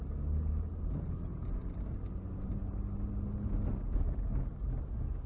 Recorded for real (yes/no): yes